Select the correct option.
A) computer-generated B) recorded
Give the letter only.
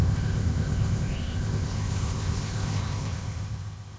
A